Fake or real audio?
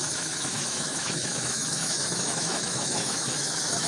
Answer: fake